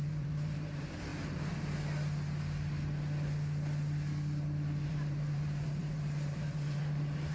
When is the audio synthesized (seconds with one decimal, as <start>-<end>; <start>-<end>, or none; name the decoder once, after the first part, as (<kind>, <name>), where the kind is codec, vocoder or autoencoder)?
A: 0.0-1.1 (vocoder, BigVGAN v2); 4.8-7.3

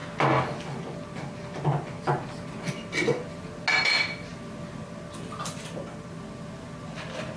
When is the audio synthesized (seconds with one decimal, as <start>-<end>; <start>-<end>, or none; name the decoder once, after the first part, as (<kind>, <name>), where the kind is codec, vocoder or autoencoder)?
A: none

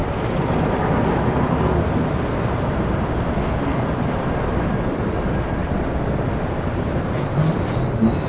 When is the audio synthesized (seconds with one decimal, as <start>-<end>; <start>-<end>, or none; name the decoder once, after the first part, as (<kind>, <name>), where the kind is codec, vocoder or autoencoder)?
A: 4.5-5.1 (vocoder, BigVGAN v2)

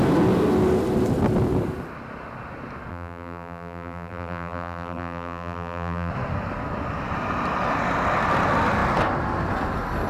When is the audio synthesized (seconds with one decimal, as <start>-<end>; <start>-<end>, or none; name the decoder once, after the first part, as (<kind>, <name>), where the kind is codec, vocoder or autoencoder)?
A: 2.9-6.1 (vocoder, BigVGAN v2)

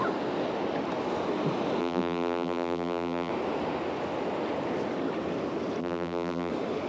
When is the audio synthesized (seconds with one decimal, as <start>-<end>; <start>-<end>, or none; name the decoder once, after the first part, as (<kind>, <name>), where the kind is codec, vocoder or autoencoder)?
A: 1.8-3.3 (vocoder, BigVGAN v2); 5.8-6.5

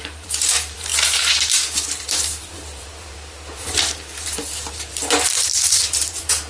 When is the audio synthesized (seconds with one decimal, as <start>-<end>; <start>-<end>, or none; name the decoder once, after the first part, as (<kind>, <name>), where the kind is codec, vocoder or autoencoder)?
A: 0.0-6.5 (vocoder, BigVGAN v2)

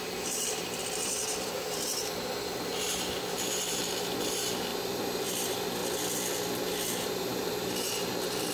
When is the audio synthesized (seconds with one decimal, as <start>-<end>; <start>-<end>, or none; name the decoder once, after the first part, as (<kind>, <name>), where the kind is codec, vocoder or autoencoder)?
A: 0.0-5.8 (vocoder, BigVGAN v2); 6.6-8.5

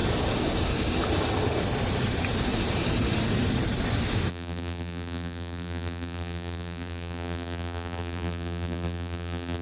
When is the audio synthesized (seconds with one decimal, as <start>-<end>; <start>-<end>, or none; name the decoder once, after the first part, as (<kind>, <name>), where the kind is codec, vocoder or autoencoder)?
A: 4.3-9.6 (vocoder, BigVGAN v2)